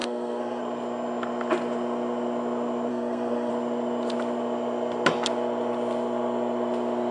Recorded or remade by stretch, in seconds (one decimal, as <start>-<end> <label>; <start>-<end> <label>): 0.0-0.6 remade; 0.6-2.9 recorded; 2.9-3.5 remade; 3.5-7.1 recorded